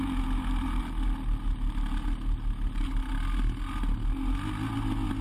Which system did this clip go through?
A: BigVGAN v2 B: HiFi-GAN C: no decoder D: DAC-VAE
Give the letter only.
C